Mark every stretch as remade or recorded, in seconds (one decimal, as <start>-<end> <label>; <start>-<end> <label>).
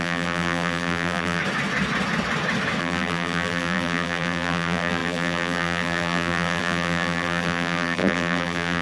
0.0-1.4 remade; 1.4-2.8 recorded; 2.8-8.8 remade